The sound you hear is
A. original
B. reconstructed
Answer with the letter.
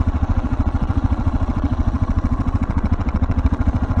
B